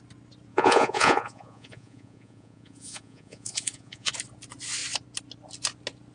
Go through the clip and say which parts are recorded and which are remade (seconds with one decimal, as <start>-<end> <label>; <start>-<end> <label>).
0.0-0.5 recorded; 0.5-4.1 remade; 4.1-6.1 recorded